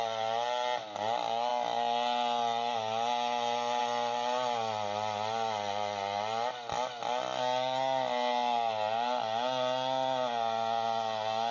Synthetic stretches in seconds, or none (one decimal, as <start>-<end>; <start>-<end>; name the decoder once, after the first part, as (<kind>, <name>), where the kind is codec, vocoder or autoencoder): none